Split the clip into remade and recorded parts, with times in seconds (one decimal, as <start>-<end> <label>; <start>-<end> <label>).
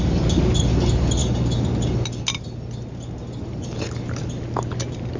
0.0-5.2 recorded